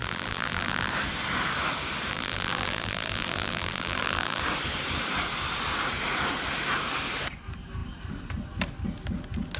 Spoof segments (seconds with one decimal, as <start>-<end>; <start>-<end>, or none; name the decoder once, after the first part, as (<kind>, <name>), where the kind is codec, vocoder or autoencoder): 0.0-0.9 (vocoder, BigVGAN v2); 2.1-4.4

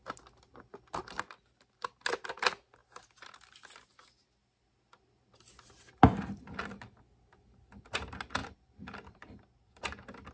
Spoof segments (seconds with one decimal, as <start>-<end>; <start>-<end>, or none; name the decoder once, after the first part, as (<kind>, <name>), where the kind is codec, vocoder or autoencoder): none

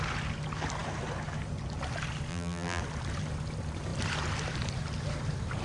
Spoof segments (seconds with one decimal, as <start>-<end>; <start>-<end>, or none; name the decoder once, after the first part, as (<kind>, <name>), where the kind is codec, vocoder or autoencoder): 2.3-2.8 (vocoder, BigVGAN v2)

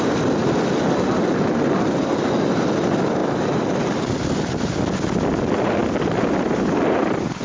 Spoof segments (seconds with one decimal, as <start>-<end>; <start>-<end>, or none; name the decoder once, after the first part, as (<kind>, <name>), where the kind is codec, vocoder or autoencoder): none